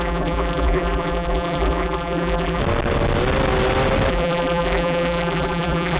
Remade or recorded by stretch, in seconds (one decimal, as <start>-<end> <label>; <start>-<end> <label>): 0.0-2.6 remade; 2.6-4.1 recorded; 4.1-6.0 remade